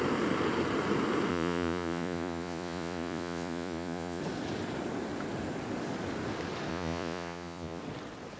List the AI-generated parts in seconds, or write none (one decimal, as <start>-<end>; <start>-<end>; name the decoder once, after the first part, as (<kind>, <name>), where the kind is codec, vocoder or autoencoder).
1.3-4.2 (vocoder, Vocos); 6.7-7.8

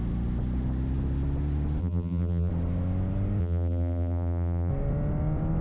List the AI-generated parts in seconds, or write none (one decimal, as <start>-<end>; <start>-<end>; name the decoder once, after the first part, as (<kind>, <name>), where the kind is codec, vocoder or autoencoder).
1.8-2.5 (vocoder, BigVGAN v2); 3.4-4.7

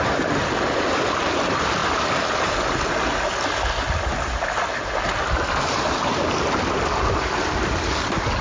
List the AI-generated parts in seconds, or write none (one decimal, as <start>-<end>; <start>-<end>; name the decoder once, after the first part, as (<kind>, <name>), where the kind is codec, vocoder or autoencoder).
none

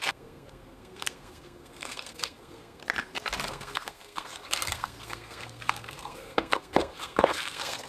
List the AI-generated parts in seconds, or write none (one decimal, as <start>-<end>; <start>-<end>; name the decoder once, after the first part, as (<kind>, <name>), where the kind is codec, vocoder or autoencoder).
0.0-2.8 (codec, SNAC); 3.5-7.9